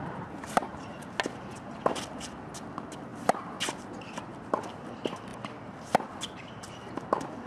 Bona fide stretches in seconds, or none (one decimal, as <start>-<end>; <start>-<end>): 0.0-7.5